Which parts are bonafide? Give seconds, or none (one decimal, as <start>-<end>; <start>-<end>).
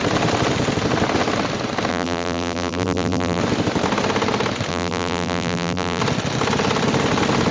0.0-1.9; 3.4-4.7; 6.0-7.5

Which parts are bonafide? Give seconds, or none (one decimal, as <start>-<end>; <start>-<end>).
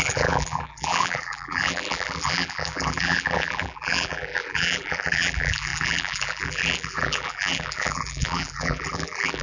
none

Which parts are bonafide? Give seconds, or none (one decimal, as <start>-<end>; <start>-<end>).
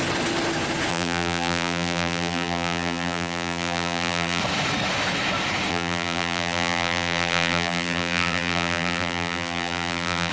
0.0-0.9; 4.4-5.7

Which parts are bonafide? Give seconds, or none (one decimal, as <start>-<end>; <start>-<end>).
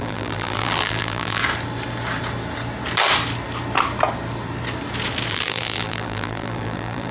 1.4-5.3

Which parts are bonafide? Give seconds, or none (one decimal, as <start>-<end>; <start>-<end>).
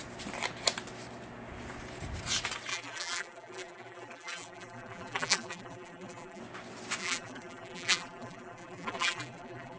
0.0-2.7; 6.4-7.0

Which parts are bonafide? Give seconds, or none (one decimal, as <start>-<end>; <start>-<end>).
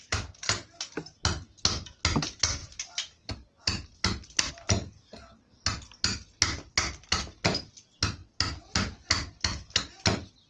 0.0-2.6; 4.5-10.5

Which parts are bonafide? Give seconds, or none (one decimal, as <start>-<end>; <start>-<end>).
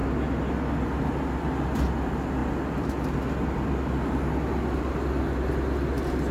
0.0-6.3